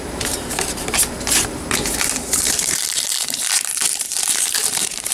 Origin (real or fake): fake